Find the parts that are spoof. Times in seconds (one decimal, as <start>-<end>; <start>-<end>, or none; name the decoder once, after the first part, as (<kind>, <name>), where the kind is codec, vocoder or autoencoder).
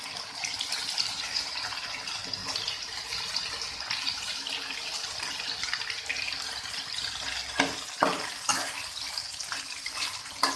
none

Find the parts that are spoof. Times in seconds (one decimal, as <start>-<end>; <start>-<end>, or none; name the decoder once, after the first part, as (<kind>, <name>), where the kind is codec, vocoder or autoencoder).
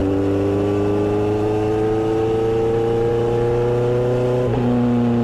none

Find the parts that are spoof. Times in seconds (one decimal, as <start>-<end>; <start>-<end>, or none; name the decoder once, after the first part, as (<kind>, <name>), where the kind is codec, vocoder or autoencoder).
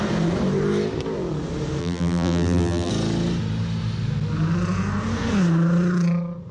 1.8-2.9 (vocoder, BigVGAN v2)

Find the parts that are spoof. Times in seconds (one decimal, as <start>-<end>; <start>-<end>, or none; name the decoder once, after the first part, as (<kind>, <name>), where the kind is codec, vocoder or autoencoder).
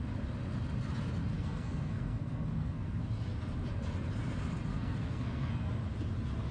1.3-3.0 (codec, SNAC); 4.7-5.7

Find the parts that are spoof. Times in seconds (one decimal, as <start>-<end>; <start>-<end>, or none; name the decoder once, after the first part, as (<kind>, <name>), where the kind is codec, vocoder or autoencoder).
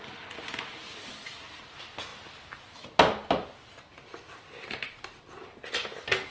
none